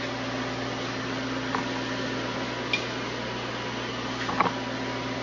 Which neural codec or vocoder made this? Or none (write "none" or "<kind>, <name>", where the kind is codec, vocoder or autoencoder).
none